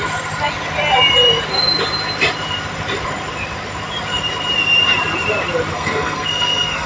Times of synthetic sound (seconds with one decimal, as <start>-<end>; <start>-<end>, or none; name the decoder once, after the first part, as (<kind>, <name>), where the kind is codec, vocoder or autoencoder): 5.7-6.9 (codec, SNAC)